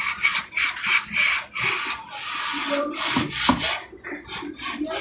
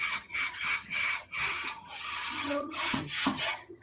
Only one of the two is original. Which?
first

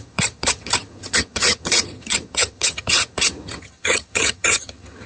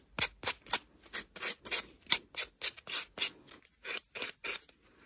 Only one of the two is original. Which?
second